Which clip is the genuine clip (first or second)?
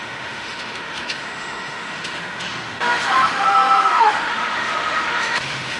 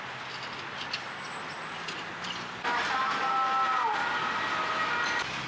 second